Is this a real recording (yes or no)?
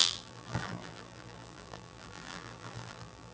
no